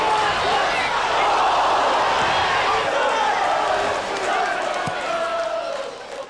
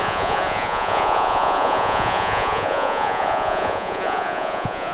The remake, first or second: second